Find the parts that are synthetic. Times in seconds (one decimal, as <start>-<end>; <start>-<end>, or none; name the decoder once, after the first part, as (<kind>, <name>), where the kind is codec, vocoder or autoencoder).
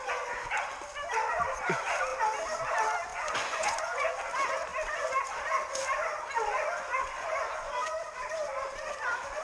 3.1-4.1 (vocoder, Vocos); 6.9-7.7